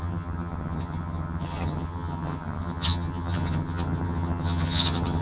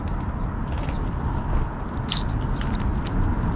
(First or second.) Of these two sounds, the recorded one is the second